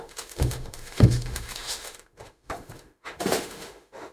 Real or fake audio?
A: fake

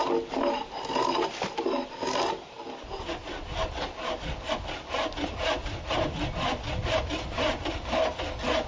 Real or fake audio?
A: real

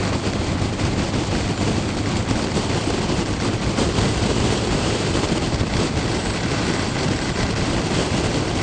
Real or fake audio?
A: fake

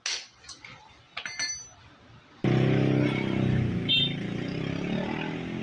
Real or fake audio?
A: real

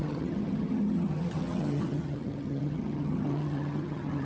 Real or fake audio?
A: fake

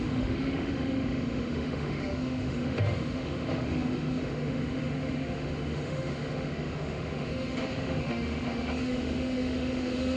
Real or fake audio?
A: fake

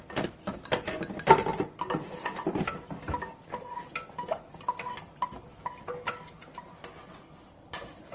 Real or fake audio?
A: real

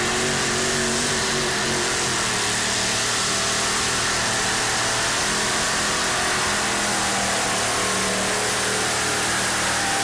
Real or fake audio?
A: real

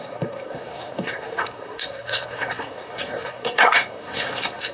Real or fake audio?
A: fake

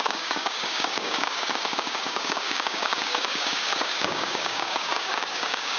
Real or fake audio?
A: fake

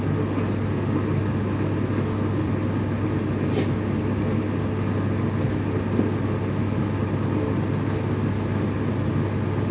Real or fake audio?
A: real